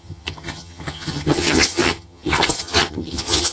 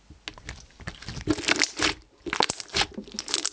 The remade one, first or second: first